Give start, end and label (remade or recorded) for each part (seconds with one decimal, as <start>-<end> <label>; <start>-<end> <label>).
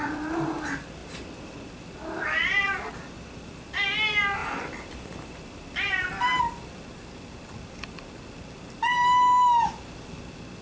0.0-1.0 recorded; 1.0-2.9 remade; 2.9-4.4 recorded; 4.4-6.4 remade; 6.4-10.6 recorded